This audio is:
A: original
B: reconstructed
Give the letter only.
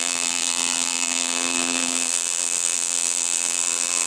B